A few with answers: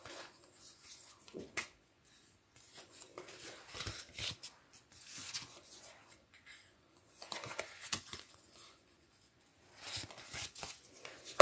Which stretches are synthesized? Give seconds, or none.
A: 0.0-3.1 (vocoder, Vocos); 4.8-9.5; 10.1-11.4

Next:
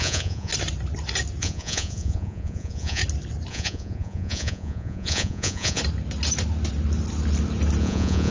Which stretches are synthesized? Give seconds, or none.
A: 0.0-0.5 (vocoder, Vocos); 1.4-3.0; 3.5-5.8; 7.8-8.3

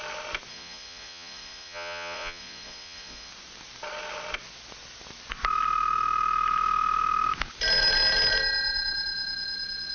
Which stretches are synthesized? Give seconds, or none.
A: 0.5-3.3 (vocoder, Vocos)

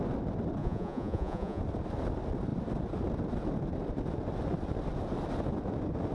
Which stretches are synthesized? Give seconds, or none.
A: 0.6-1.6 (vocoder, Vocos)